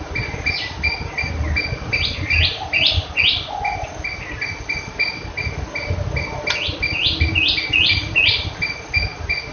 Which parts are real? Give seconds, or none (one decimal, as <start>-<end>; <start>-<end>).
0.0-9.5